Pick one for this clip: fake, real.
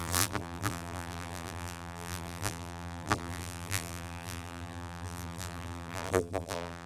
fake